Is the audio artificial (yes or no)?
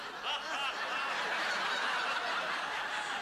no